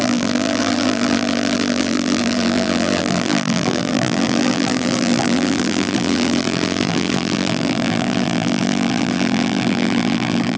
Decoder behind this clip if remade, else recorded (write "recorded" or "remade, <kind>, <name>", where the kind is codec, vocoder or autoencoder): remade, vocoder, BigVGAN v2